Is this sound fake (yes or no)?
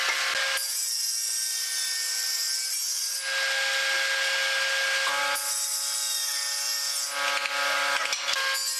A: no